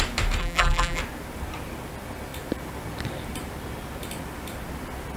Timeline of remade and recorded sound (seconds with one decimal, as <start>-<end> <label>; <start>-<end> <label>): 0.0-0.4 recorded; 0.4-1.0 remade; 1.0-5.2 recorded